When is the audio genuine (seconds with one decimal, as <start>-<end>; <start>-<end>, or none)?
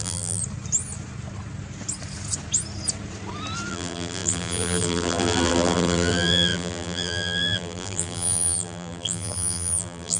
0.4-3.7